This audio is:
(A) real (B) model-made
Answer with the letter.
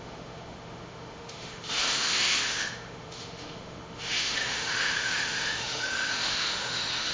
B